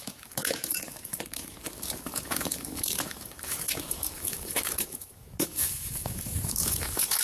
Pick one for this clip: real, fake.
fake